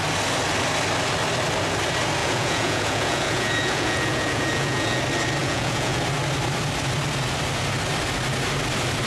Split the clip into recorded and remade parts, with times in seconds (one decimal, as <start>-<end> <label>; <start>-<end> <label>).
0.0-2.2 recorded; 2.2-5.0 remade; 5.0-5.4 recorded; 5.4-6.0 remade; 6.0-9.1 recorded